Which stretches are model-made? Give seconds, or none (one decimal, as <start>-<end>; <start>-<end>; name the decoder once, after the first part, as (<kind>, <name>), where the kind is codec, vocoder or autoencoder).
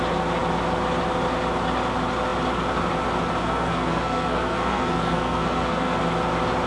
3.4-6.0 (codec, SNAC)